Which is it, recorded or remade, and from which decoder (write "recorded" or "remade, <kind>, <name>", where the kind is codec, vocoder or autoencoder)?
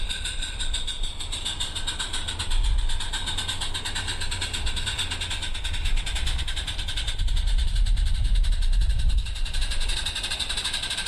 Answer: recorded